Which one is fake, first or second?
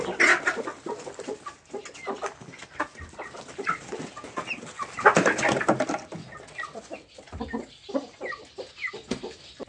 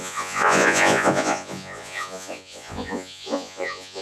second